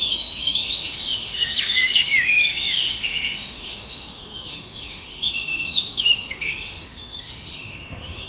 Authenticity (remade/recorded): remade